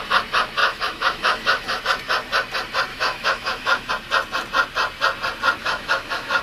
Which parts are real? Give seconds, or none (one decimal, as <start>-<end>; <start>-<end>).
0.0-0.6; 1.8-2.9; 3.9-5.6